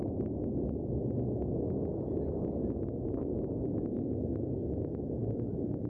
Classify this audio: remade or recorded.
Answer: recorded